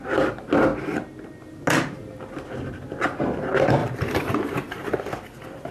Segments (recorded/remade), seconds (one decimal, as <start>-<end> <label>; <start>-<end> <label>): 0.0-3.8 recorded; 3.8-5.7 remade